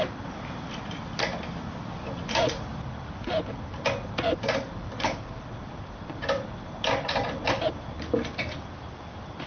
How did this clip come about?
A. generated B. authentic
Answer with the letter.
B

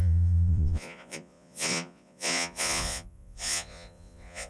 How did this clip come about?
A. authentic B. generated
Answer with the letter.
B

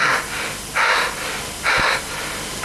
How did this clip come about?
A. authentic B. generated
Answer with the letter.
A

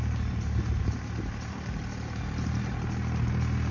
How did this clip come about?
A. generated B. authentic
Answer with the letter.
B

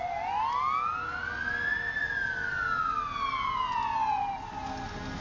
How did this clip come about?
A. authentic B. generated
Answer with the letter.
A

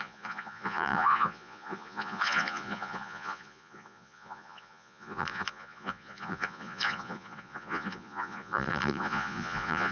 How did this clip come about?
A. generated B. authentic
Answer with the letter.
A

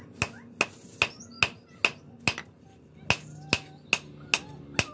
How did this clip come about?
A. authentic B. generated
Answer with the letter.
A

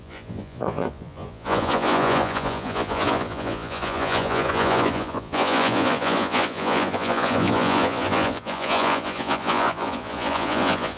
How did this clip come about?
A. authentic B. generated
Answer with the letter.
B